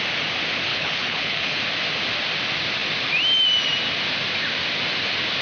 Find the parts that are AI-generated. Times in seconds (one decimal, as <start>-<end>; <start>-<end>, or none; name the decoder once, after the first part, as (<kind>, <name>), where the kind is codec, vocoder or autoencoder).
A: 0.7-1.6 (codec, HILCodec)